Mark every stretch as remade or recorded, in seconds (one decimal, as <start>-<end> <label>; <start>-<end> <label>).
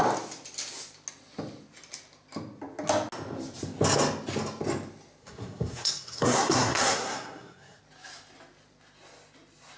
0.0-5.2 recorded; 5.2-7.8 remade; 7.8-9.8 recorded